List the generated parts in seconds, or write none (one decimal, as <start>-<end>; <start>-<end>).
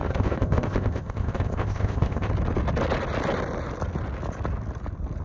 0.0-2.3